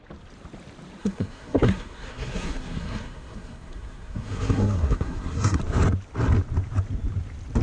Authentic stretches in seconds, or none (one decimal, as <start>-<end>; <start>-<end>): 0.0-1.0; 5.6-7.6